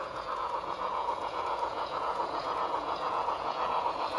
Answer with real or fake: fake